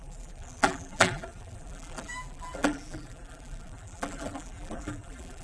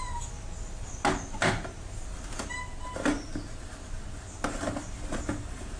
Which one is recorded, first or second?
second